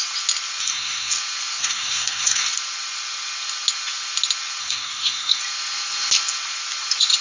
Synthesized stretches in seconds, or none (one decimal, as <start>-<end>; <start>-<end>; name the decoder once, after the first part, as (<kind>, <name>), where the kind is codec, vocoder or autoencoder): 0.6-1.1 (codec, SNAC); 1.6-2.5; 4.6-5.4